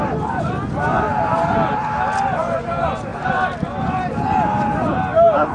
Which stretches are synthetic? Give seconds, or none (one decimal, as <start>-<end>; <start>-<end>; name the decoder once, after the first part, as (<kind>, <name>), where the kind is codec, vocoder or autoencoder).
none